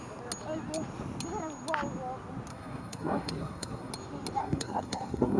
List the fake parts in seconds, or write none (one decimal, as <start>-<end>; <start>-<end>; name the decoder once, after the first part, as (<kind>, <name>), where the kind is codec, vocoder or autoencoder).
2.5-3.9 (codec, SNAC); 4.4-5.4